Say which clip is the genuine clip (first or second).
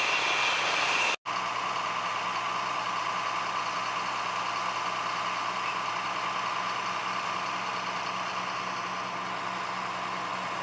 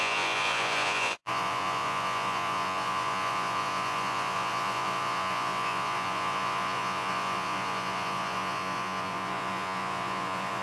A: first